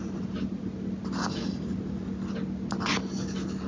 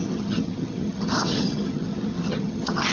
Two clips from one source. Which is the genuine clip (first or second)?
first